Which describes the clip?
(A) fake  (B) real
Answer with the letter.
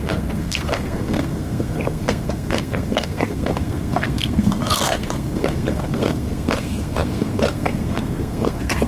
A